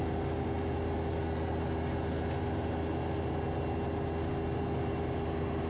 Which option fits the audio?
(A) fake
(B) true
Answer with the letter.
B